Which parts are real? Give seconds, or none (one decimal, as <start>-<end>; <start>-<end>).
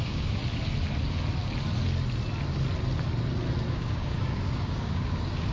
0.4-3.7